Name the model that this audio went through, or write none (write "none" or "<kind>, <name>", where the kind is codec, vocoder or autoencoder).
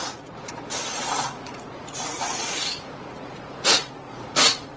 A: vocoder, Vocos